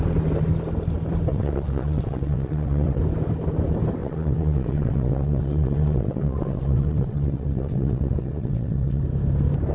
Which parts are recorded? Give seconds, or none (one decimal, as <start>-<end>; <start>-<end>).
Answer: 0.0-1.3; 3.0-4.0; 9.0-9.7